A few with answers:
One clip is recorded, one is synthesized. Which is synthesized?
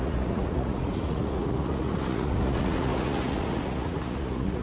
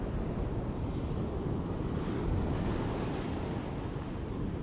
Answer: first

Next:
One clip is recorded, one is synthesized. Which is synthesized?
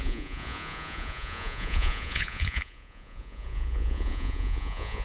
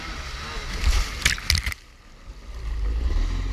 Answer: first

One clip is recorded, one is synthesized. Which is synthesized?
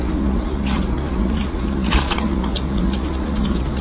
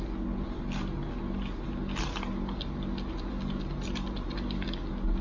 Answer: first